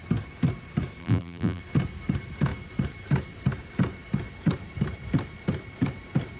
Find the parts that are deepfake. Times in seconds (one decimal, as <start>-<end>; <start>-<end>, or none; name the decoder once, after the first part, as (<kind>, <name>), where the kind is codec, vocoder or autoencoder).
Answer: 1.0-1.6 (vocoder, BigVGAN v2)